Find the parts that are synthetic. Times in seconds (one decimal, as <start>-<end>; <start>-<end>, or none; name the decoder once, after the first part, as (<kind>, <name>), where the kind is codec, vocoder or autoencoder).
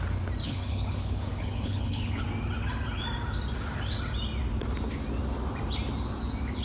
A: 0.4-2.2 (codec, HILCodec)